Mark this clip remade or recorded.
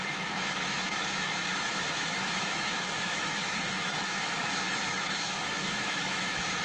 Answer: remade